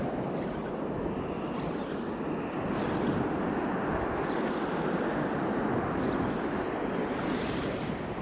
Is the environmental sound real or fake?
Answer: real